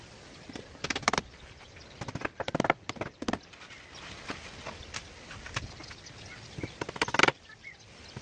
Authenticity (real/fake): real